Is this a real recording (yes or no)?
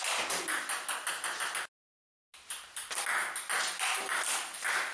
yes